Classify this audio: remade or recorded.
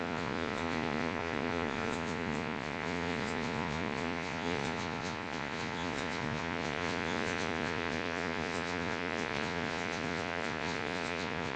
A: remade